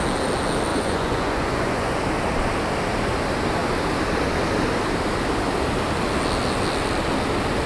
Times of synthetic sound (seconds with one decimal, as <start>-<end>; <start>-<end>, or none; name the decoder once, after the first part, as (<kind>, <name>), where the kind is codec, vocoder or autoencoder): 0.7-2.0 (vocoder, Vocos)